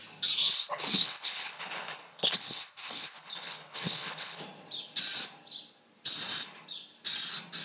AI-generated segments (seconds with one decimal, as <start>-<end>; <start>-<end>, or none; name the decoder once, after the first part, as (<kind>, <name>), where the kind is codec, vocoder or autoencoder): 0.5-4.4 (codec, HILCodec)